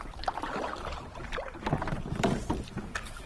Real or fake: fake